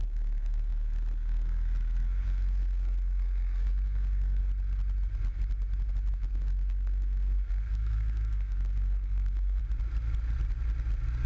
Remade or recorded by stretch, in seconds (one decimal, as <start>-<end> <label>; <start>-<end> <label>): 0.0-4.4 remade; 4.4-6.1 recorded; 6.1-9.6 remade; 9.6-11.3 recorded